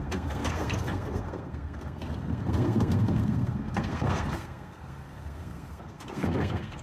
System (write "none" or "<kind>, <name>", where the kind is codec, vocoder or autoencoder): codec, SNAC